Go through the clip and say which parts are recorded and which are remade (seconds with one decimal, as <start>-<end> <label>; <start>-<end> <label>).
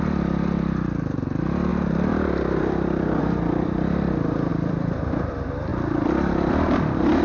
0.0-5.7 remade; 5.7-6.5 recorded; 6.5-7.2 remade